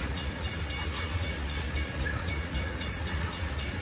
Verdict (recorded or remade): remade